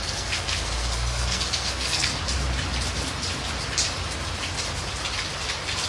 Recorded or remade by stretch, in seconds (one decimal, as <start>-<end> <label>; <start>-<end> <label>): 0.0-2.1 remade; 2.1-5.9 recorded